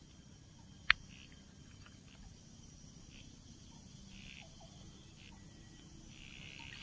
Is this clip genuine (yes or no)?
yes